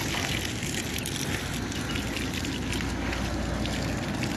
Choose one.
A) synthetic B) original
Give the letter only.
B